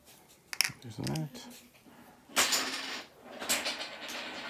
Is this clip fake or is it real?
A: real